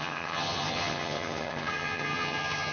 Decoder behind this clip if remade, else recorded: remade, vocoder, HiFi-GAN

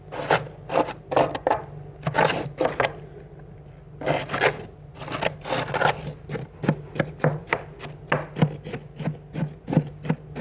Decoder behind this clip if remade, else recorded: recorded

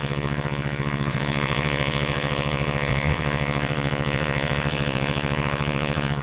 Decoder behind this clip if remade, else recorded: remade, vocoder, WaveNeXt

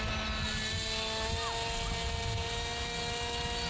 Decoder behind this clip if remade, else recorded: recorded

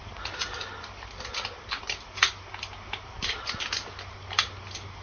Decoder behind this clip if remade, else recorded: remade, vocoder, BigVGAN v2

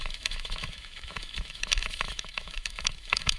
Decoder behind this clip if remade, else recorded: remade, autoencoder, DAC-VAE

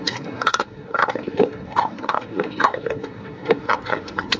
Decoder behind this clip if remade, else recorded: remade, codec, SNAC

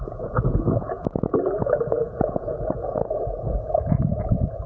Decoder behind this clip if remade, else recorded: remade, vocoder, Vocos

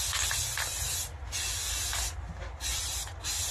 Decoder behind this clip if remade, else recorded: recorded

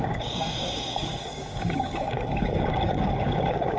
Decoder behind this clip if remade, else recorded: remade, codec, DAC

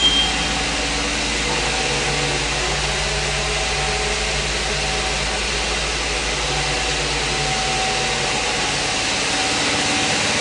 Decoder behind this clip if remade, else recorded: recorded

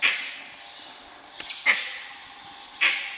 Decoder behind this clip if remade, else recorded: recorded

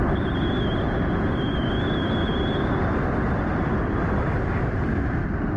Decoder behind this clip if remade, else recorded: recorded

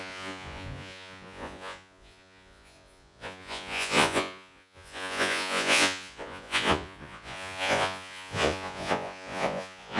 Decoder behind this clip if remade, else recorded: remade, vocoder, Vocos